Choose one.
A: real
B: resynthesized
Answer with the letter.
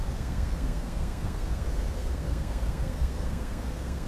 B